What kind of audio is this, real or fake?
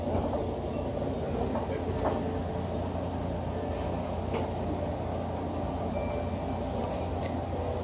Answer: real